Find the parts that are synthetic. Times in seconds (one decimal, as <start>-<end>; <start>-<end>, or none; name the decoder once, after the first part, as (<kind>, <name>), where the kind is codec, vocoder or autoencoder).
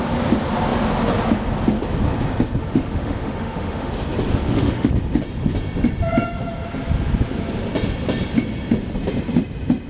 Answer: 2.6-3.9 (autoencoder, DAC-VAE); 4.3-4.9